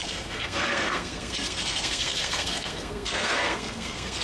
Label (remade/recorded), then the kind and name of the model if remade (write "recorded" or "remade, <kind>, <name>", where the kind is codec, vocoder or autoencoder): remade, codec, SNAC